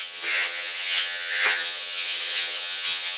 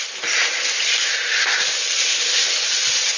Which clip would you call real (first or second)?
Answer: second